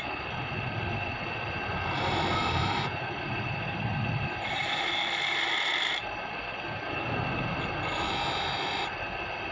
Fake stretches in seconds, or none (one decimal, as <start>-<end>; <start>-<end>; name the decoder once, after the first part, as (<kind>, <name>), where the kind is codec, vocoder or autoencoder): 2.4-4.9 (vocoder, BigVGAN v2)